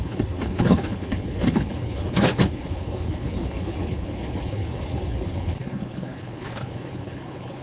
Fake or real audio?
fake